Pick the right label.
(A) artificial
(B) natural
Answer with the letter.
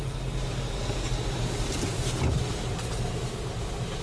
B